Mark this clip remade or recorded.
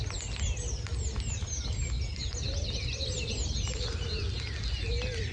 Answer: recorded